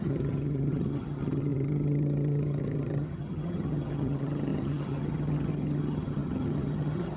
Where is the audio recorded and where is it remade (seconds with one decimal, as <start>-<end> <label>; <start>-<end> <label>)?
0.0-7.2 remade